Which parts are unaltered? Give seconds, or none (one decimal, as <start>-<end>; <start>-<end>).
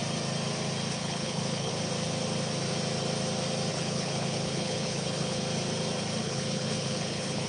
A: 0.0-0.9; 1.7-3.7; 5.4-6.2